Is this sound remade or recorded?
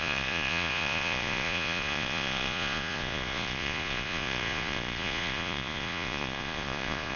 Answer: remade